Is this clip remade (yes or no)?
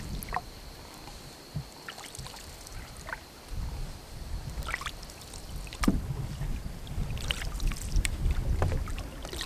yes